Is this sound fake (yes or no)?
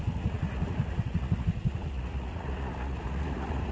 yes